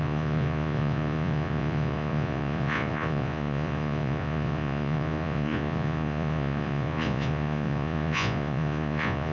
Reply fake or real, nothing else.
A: fake